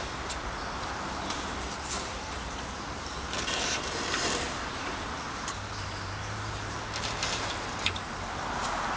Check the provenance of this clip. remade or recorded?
remade